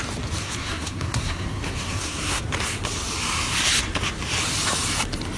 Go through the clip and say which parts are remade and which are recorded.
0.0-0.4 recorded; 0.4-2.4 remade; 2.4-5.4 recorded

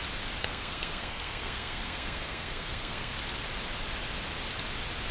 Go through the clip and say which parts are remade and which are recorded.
0.0-0.4 recorded; 0.4-3.1 remade; 3.1-5.1 recorded

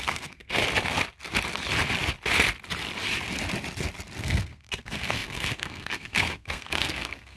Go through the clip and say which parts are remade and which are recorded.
0.0-0.6 remade; 0.6-4.2 recorded; 4.2-7.4 remade

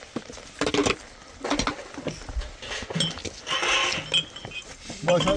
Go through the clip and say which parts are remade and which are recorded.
0.0-5.4 recorded

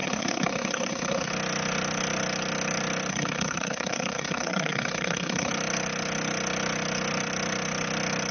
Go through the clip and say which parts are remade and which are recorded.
0.0-1.3 remade; 1.3-3.1 recorded; 3.1-5.5 remade; 5.5-8.3 recorded